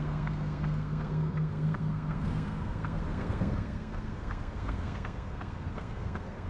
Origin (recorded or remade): remade